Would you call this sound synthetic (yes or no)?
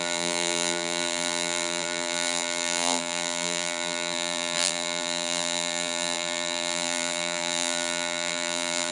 yes